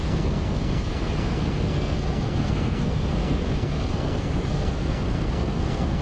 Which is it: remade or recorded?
remade